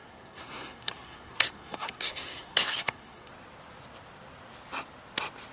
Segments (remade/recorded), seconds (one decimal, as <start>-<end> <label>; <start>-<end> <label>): 0.0-3.3 remade; 3.3-5.5 recorded